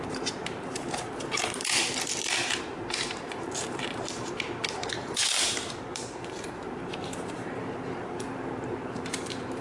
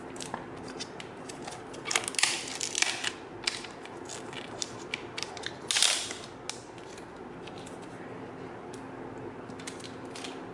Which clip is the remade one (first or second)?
first